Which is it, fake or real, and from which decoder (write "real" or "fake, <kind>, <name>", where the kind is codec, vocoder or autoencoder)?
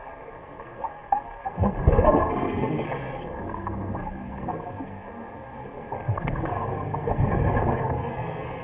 fake, codec, SNAC